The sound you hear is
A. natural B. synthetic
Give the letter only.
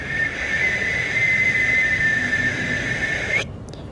A